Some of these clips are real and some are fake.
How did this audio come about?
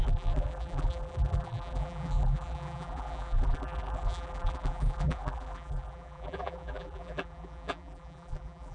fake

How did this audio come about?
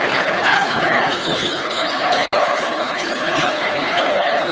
fake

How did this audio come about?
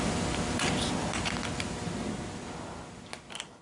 real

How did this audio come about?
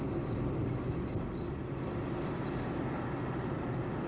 real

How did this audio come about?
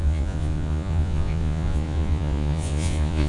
fake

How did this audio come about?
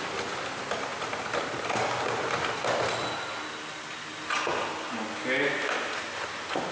real